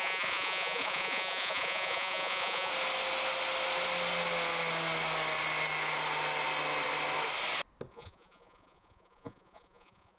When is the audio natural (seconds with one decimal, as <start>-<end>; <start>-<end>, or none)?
2.7-7.9